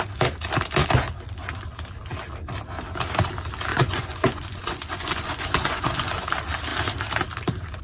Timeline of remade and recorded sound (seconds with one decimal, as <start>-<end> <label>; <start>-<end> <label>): 0.0-3.7 recorded; 3.7-6.1 remade; 6.1-7.8 recorded